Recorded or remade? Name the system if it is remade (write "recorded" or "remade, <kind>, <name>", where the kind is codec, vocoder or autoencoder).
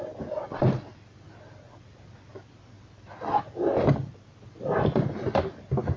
recorded